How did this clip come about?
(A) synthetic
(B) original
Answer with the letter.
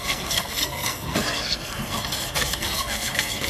A